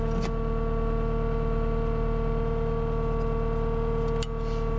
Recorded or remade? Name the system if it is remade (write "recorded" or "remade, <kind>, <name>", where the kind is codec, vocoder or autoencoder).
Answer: recorded